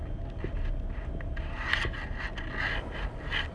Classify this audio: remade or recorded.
recorded